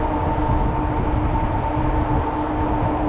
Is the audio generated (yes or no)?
no